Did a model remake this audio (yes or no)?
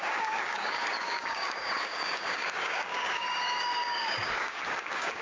yes